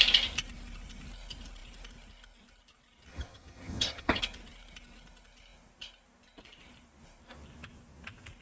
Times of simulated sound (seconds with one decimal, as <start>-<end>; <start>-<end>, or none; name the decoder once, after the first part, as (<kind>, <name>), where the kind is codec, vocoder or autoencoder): 3.1-4.2 (vocoder, HiFi-GAN)

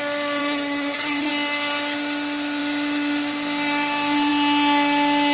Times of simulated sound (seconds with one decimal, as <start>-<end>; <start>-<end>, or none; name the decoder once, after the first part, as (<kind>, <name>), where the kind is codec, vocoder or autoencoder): 0.4-1.3 (vocoder, HiFi-GAN)

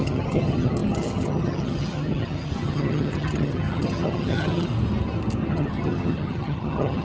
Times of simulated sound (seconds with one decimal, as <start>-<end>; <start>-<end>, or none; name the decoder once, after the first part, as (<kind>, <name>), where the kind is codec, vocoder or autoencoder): 0.0-4.7 (vocoder, HiFi-GAN); 5.5-7.0

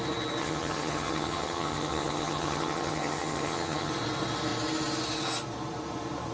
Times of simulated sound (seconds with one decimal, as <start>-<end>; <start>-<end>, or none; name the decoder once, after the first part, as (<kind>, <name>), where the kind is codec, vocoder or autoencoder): 0.4-3.9 (vocoder, HiFi-GAN)

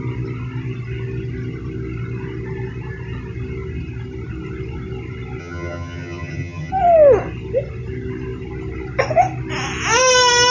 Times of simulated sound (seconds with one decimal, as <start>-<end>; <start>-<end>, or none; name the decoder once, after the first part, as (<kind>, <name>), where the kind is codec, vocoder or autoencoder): 5.4-6.7 (vocoder, HiFi-GAN)